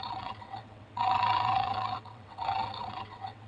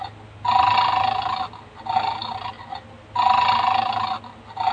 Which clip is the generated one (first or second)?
first